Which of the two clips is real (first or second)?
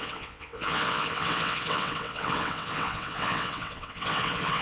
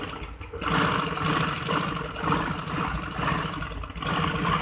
second